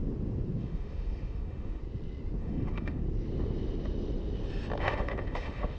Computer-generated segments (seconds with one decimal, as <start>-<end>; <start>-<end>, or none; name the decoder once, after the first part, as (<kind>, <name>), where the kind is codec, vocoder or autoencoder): 0.6-1.8 (autoencoder, DAC-VAE); 2.4-3.0; 4.8-5.8